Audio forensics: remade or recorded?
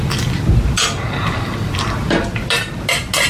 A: recorded